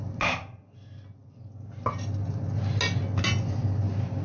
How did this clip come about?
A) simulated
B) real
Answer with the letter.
B